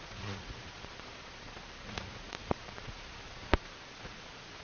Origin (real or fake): fake